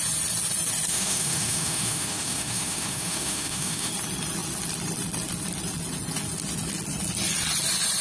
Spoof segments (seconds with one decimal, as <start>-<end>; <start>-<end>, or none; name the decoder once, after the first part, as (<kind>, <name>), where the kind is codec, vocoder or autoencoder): 0.9-3.9 (autoencoder, DAC-VAE)